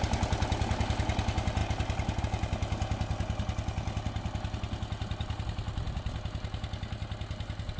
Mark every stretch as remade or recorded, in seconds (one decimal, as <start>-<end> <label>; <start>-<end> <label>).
0.0-7.8 recorded